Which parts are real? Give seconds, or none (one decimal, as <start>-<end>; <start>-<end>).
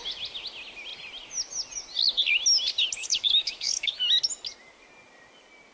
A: 0.0-3.0; 4.0-5.7